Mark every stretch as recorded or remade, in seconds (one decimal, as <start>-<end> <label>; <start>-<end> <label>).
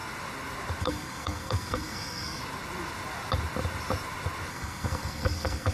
0.0-0.8 recorded; 0.8-2.4 remade; 2.4-4.5 recorded; 4.5-5.7 remade